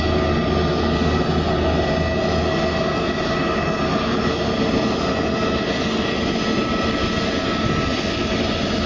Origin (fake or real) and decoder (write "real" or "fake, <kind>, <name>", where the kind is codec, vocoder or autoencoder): real